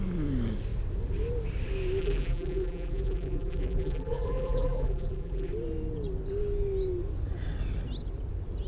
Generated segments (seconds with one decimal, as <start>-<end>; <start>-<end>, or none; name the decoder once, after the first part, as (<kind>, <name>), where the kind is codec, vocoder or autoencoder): 2.0-5.5 (vocoder, BigVGAN v2)